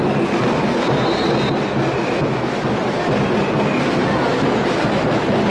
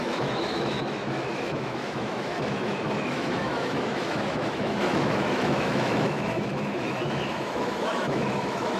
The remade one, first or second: second